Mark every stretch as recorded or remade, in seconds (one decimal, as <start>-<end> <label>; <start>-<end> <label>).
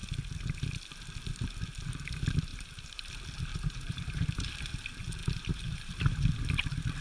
0.0-2.5 recorded; 2.5-3.1 remade; 3.1-3.5 recorded; 3.5-4.4 remade; 4.4-5.2 recorded; 5.2-5.9 remade; 5.9-7.0 recorded